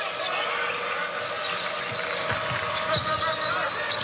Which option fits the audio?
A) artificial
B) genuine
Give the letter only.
B